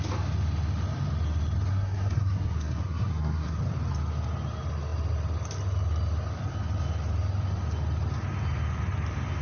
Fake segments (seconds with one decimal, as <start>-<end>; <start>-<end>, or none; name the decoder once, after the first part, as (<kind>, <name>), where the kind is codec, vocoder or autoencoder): 1.7-3.6 (codec, SNAC)